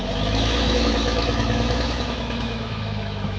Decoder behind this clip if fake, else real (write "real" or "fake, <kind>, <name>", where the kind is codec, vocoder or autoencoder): fake, autoencoder, DAC-VAE